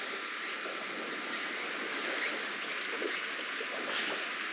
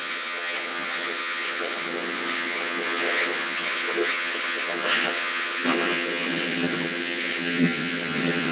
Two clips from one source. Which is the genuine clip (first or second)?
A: first